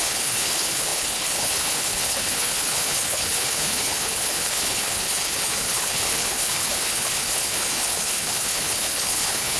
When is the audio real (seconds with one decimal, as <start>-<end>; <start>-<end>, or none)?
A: none